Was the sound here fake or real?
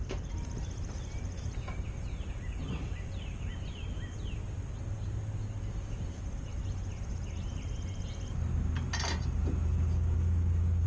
real